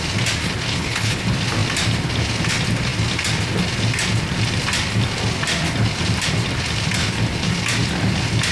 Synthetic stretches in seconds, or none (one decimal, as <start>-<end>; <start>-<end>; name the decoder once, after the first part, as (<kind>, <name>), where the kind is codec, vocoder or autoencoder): 0.7-1.2 (codec, HILCodec)